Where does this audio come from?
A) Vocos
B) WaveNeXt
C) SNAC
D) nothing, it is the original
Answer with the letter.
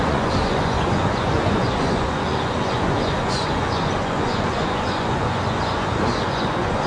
A